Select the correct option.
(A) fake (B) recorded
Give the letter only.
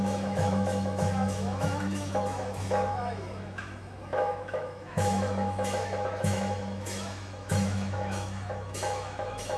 A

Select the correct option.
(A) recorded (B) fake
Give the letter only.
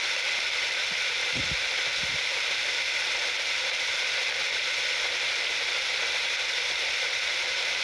B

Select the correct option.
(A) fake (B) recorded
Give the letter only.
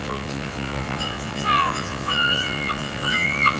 A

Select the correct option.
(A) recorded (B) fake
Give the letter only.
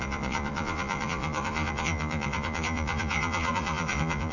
B